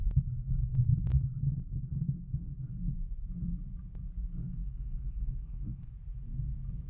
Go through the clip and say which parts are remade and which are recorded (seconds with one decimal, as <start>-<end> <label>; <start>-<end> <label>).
0.0-1.1 recorded; 1.1-2.5 remade; 2.5-4.4 recorded; 4.4-5.9 remade; 5.9-6.9 recorded